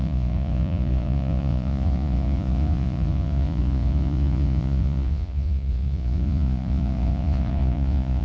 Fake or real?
fake